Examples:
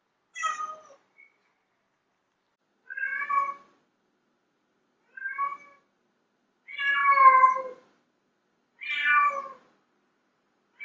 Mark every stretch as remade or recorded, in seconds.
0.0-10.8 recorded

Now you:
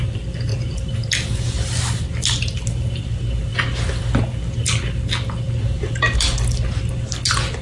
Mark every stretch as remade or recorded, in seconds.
0.0-0.5 recorded; 0.5-1.1 remade; 1.1-7.6 recorded

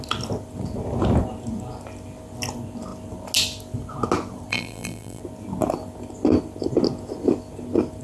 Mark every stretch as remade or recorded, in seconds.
0.0-4.5 recorded; 4.5-5.2 remade; 5.2-8.0 recorded

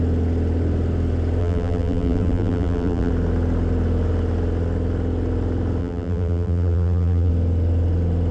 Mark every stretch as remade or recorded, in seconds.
0.0-1.4 recorded; 1.4-3.1 remade; 3.1-5.8 recorded; 5.8-7.3 remade; 7.3-8.3 recorded

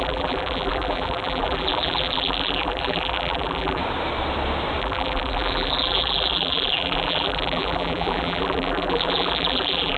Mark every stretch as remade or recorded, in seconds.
0.0-3.8 remade; 3.8-4.8 recorded; 4.8-10.0 remade

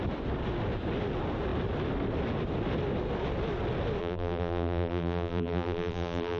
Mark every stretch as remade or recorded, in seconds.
0.0-4.0 recorded; 4.0-6.4 remade

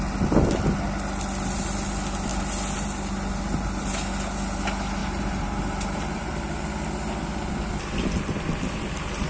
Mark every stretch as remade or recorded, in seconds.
0.0-5.0 recorded; 5.0-6.6 remade; 6.6-9.3 recorded